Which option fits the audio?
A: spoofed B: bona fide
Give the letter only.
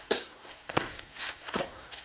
A